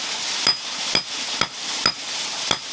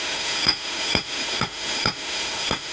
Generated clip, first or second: second